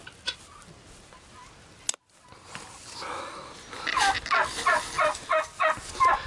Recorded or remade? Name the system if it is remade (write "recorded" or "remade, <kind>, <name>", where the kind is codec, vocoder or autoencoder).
recorded